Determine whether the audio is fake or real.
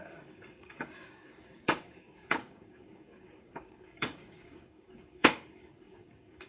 fake